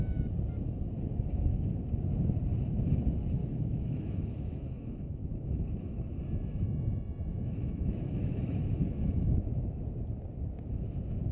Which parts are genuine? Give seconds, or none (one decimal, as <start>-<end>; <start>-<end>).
0.0-3.4; 6.2-7.3; 9.8-11.3